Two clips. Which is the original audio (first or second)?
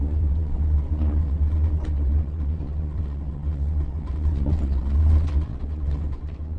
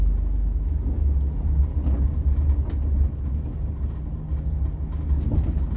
second